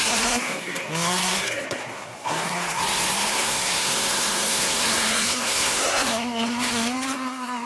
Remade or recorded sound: remade